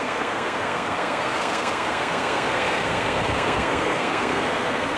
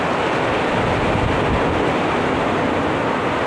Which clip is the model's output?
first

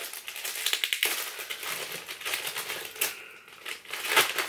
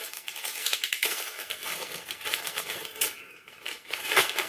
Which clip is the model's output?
second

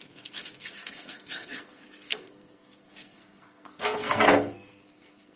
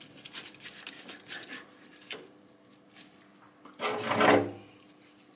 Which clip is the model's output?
first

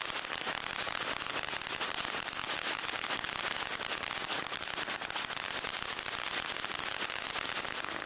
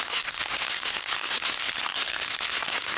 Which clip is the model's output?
second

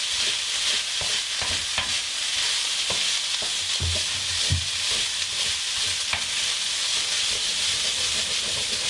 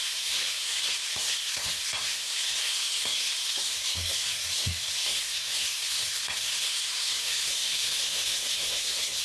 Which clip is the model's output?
second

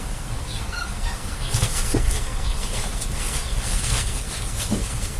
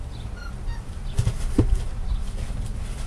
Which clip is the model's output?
first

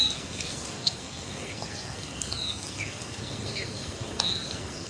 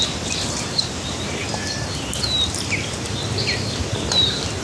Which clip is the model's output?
first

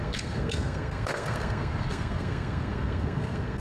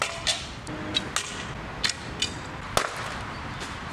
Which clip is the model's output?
first